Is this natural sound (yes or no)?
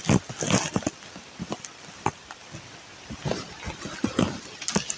yes